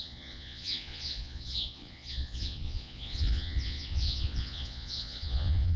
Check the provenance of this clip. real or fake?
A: fake